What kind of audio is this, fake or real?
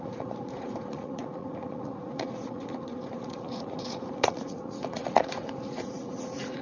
fake